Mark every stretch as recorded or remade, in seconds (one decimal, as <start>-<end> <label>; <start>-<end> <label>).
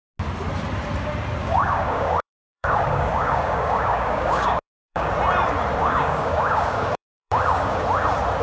0.0-1.4 recorded; 1.4-5.1 remade; 5.1-5.8 recorded; 5.8-7.8 remade; 7.8-8.4 recorded